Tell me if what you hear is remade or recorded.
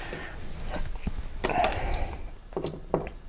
recorded